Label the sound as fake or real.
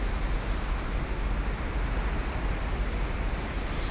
real